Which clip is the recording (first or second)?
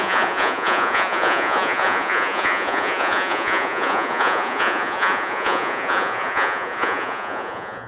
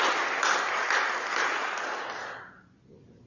second